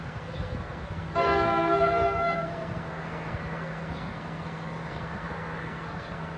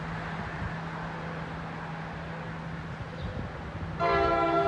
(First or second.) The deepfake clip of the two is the first